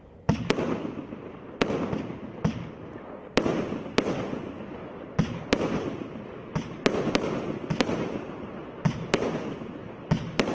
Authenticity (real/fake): real